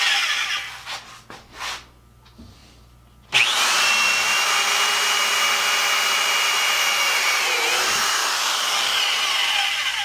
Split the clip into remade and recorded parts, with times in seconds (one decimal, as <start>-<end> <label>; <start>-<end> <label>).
0.0-8.2 recorded; 8.2-9.0 remade; 9.0-10.0 recorded